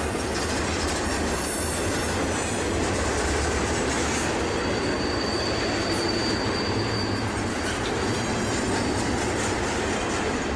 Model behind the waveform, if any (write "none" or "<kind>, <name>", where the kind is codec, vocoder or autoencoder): none